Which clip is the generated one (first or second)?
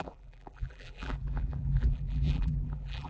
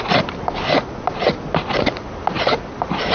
first